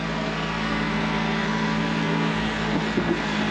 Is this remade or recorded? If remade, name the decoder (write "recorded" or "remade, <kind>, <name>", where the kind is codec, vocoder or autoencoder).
remade, codec, SNAC